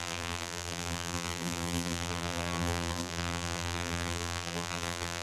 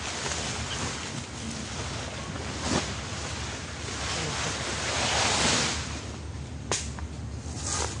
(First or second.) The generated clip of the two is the first